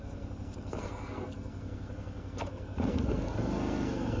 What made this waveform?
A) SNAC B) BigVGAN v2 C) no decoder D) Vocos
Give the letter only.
A